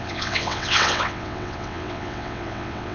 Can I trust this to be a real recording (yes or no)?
no